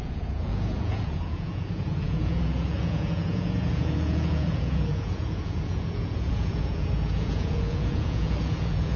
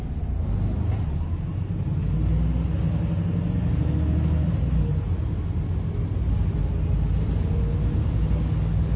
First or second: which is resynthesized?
first